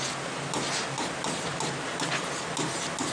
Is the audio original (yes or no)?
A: yes